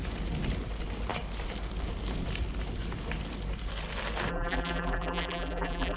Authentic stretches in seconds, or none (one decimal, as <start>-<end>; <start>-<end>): 0.0-4.3